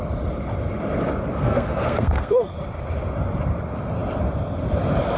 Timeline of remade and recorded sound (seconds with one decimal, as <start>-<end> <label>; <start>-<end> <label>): 0.0-1.3 recorded; 1.3-2.5 remade; 2.5-5.2 recorded